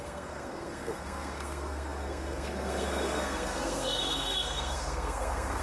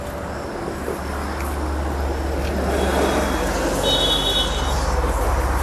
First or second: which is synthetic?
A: first